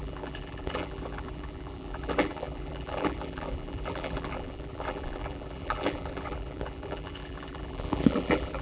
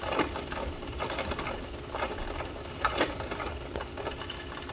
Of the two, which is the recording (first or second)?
second